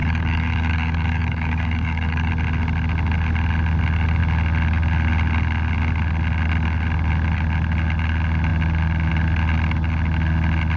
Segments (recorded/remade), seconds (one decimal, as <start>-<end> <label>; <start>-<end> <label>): 0.0-2.3 remade; 2.3-10.8 recorded